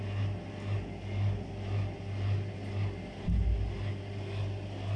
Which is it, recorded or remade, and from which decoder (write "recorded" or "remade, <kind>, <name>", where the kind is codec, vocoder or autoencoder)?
recorded